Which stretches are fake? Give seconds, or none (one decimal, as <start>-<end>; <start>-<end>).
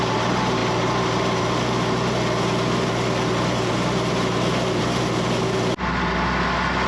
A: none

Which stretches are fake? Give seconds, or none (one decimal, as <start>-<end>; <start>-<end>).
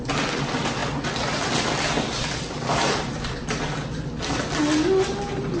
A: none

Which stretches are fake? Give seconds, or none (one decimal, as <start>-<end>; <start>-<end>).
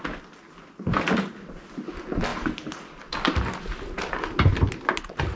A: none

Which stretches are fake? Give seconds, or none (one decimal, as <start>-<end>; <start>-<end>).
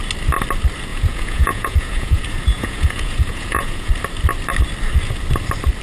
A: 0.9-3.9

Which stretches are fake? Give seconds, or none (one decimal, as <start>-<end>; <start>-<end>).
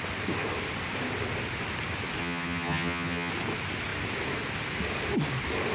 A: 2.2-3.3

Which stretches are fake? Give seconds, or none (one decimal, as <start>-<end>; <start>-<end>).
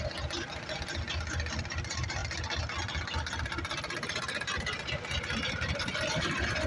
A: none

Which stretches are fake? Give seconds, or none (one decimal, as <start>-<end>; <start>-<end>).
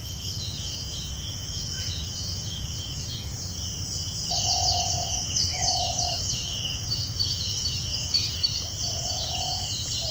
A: 0.0-3.3; 5.1-8.5